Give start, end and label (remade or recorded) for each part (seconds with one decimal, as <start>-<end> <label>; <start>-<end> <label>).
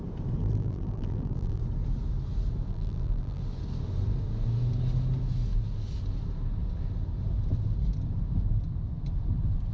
0.0-0.4 recorded; 0.4-1.6 remade; 1.6-2.7 recorded; 2.7-3.4 remade; 3.4-9.7 recorded